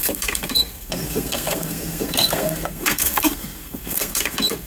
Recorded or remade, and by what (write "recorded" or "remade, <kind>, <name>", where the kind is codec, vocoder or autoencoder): remade, codec, SNAC